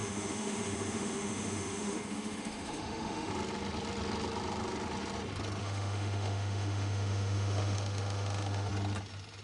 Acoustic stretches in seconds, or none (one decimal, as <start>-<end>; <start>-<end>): 3.3-5.6; 8.7-9.4